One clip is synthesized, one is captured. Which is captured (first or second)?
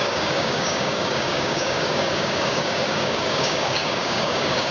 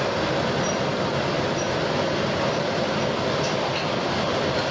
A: second